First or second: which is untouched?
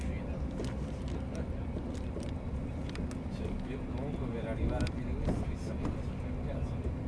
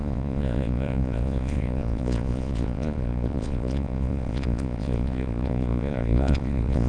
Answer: first